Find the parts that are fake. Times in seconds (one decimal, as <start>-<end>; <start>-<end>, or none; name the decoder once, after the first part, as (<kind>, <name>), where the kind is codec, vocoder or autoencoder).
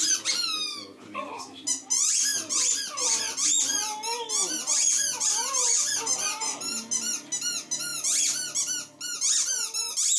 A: none